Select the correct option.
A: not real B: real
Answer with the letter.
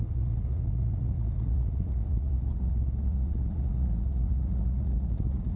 A